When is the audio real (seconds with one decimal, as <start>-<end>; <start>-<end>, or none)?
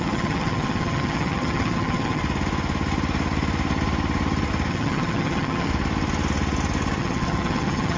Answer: 2.2-4.7; 5.7-7.0